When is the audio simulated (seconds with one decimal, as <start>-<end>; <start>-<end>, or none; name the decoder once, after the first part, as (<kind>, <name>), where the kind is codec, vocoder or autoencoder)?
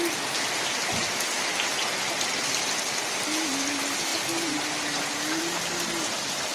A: none